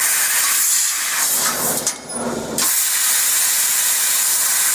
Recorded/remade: recorded